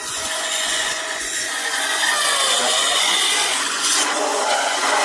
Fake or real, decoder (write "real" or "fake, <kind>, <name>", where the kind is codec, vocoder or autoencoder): fake, vocoder, Vocos